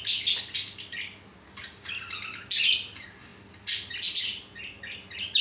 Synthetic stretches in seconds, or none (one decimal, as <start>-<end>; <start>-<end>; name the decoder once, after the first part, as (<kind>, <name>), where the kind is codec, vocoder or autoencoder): none